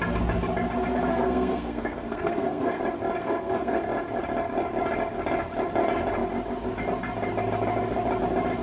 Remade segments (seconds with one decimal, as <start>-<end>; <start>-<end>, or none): 1.1-2.8; 3.2-3.8